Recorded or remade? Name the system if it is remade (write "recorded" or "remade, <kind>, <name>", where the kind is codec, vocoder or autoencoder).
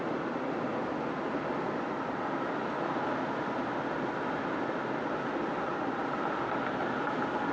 recorded